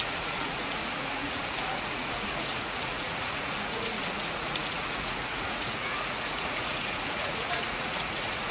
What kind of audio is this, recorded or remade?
remade